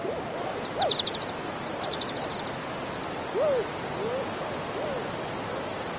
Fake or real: real